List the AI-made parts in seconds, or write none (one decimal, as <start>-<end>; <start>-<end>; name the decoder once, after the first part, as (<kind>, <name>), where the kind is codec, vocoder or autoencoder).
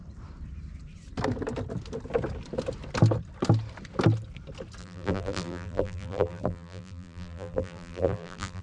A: 4.8-8.6 (vocoder, BigVGAN v2)